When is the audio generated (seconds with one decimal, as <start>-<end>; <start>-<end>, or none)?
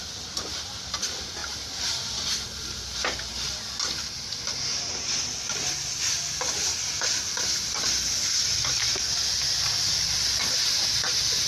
none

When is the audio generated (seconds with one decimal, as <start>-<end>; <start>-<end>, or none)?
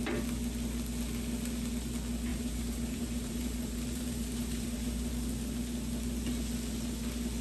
2.3-5.1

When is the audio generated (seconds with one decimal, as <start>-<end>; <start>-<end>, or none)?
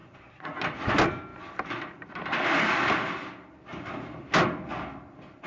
none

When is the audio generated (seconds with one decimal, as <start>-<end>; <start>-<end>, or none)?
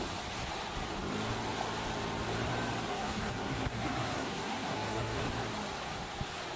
2.9-5.2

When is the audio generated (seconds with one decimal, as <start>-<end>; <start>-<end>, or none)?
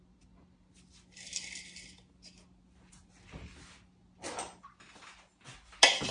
none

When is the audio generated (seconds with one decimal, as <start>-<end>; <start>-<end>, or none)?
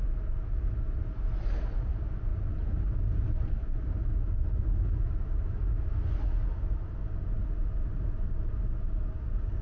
none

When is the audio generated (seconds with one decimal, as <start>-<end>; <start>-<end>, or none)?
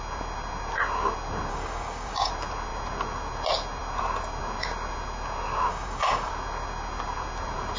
1.5-2.3; 5.7-6.3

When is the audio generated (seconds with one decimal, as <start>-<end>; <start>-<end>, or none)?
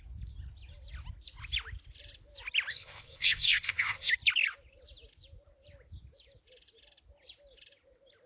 2.7-4.1